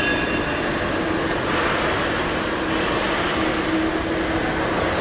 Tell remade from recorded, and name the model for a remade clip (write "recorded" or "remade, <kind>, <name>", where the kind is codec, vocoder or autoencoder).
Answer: recorded